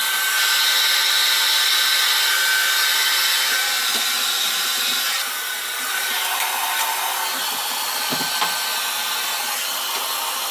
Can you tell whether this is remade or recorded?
recorded